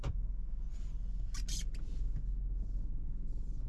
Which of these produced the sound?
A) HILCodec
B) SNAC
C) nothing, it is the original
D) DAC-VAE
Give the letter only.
C